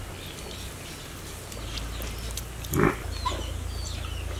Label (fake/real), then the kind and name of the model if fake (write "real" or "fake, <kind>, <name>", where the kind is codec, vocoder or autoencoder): real